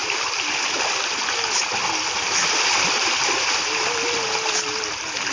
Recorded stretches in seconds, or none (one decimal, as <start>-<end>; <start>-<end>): 0.0-5.3